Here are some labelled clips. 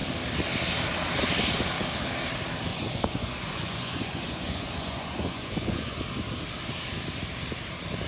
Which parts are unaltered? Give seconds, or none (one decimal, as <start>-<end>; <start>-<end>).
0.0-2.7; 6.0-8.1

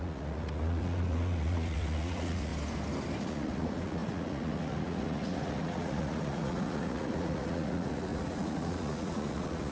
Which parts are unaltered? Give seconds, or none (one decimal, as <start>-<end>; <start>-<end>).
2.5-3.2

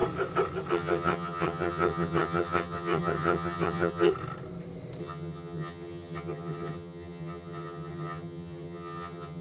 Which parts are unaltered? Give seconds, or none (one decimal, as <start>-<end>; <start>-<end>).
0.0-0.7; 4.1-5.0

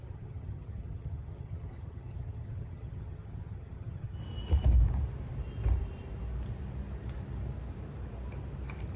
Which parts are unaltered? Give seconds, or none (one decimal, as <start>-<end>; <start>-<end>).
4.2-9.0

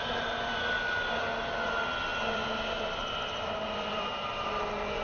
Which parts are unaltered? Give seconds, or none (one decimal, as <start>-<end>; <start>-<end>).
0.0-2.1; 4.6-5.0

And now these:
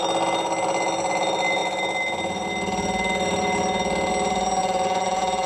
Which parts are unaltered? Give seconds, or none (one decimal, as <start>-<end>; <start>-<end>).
0.0-4.6

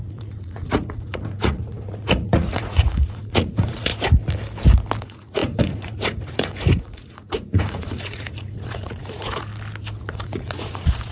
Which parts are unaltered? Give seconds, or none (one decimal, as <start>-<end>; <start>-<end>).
3.9-5.0; 9.5-10.0